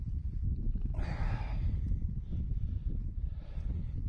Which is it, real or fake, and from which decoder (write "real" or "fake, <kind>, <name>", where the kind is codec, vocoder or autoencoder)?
fake, vocoder, BigVGAN v2